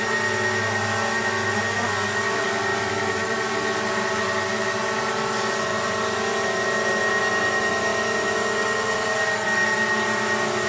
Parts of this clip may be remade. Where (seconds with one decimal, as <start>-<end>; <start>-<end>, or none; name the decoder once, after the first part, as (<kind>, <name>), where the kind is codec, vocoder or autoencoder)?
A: 2.7-3.5 (vocoder, BigVGAN v2); 5.7-6.9